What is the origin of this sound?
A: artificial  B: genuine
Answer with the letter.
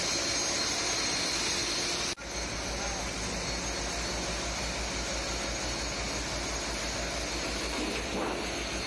B